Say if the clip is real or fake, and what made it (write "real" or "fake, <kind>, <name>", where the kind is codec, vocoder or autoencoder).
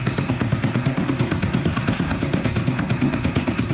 fake, codec, SNAC